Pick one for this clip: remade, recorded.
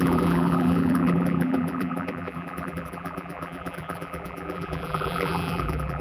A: remade